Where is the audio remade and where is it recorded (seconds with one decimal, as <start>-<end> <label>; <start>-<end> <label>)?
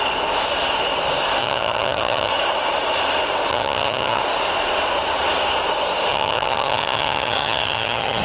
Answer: 0.0-1.4 recorded; 1.4-2.3 remade; 2.3-3.5 recorded; 3.5-4.2 remade; 4.2-6.1 recorded; 6.1-8.2 remade